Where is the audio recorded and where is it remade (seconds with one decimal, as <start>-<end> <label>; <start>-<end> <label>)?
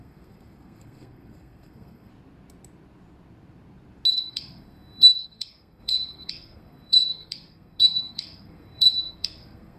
0.0-2.1 remade; 2.1-4.1 recorded; 4.1-9.8 remade